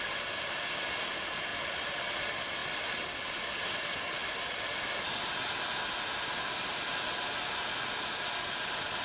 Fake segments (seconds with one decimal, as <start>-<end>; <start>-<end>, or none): none